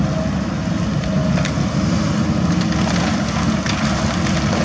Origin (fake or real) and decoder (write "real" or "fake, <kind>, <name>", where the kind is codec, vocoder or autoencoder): real